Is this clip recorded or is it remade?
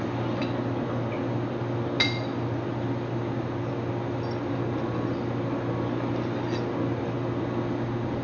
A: recorded